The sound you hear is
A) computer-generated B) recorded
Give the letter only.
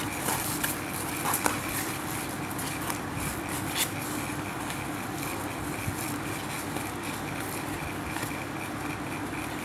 B